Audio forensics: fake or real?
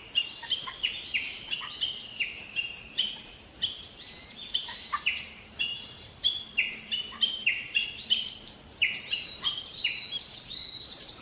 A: fake